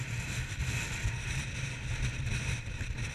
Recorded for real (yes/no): yes